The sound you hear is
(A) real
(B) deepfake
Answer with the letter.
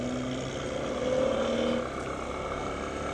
A